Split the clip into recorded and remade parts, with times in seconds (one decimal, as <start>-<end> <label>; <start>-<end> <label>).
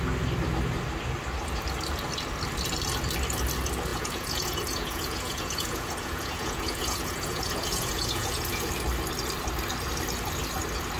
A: 0.0-3.9 recorded; 3.9-8.7 remade; 8.7-11.0 recorded